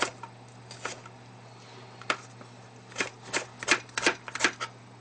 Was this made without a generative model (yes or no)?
yes